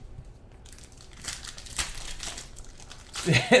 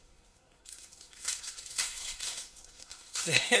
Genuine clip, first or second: first